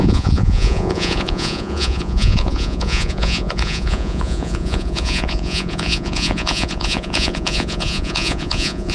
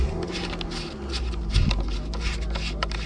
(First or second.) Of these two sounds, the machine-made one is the first